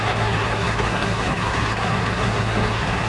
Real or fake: fake